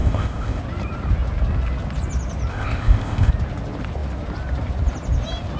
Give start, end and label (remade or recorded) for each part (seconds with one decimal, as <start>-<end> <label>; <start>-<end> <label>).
0.0-0.6 remade; 0.6-2.5 recorded; 2.5-3.3 remade; 3.3-5.6 recorded